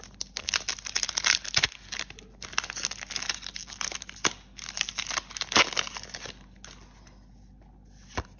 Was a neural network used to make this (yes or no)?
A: no